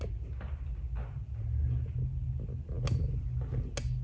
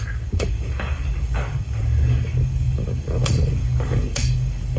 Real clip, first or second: first